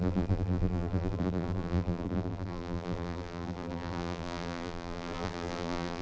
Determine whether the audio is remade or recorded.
remade